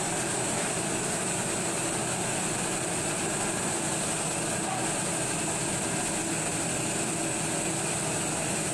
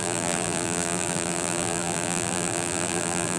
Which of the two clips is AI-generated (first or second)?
second